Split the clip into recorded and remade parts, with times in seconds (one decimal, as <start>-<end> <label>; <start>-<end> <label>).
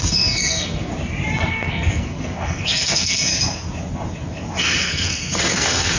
0.0-0.9 remade; 0.9-1.5 recorded; 1.5-3.3 remade; 3.3-4.6 recorded; 4.6-6.0 remade